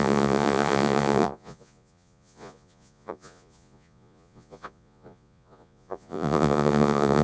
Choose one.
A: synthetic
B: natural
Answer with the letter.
A